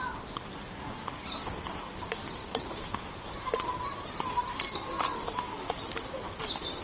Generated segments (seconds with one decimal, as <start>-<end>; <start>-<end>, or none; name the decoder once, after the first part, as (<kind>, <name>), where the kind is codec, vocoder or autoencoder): none